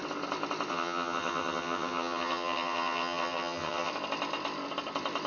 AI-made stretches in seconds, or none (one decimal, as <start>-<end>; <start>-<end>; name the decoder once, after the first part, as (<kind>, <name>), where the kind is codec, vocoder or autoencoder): 0.7-3.9 (vocoder, HiFi-GAN)